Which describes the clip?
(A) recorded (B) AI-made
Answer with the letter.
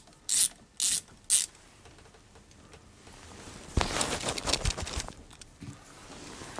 A